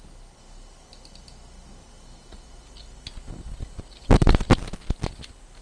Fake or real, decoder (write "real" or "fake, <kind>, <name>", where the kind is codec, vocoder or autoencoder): real